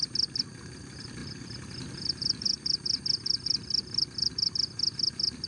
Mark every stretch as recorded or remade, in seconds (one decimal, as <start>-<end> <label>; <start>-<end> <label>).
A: 0.0-1.2 recorded; 1.2-4.5 remade; 4.5-5.5 recorded